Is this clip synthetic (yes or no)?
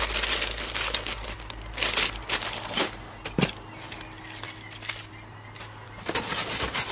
no